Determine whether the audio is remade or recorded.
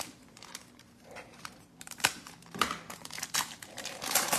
remade